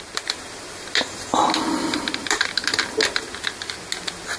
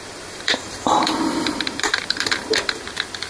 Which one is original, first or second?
first